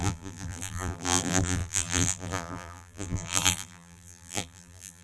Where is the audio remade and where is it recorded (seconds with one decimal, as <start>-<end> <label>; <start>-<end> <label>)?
0.0-5.0 remade